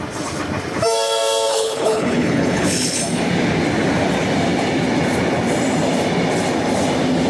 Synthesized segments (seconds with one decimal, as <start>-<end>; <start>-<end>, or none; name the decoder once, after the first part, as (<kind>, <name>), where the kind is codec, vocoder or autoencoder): 1.5-3.0 (codec, HILCodec)